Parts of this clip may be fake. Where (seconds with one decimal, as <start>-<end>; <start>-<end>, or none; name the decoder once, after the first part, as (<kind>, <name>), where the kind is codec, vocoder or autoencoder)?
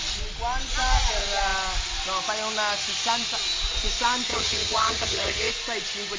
4.3-5.5 (vocoder, HiFi-GAN)